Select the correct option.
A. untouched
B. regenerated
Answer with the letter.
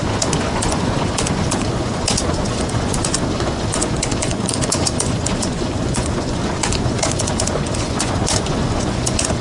B